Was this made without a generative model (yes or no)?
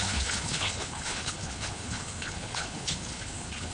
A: no